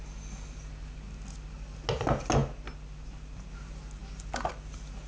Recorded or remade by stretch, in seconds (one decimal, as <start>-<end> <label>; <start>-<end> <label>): 0.0-5.1 recorded